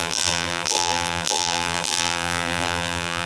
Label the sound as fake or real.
fake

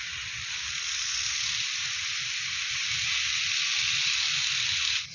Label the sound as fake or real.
real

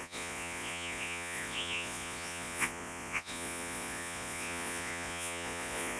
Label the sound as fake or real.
fake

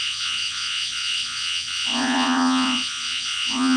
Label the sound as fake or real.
fake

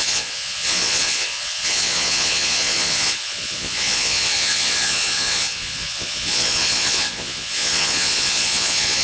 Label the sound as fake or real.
fake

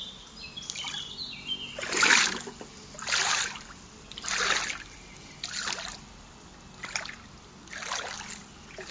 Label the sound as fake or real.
real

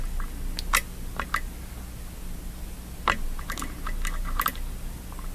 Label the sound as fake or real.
real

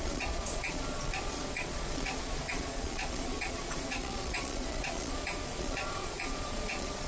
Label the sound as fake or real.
fake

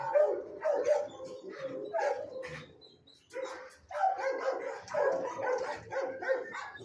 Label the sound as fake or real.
real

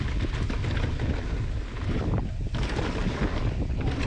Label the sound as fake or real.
real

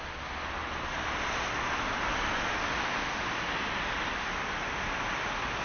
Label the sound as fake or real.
real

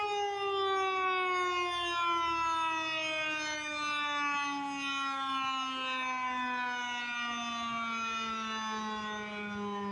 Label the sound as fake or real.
real